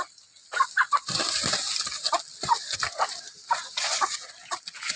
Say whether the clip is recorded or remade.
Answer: recorded